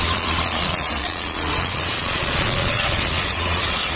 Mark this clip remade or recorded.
remade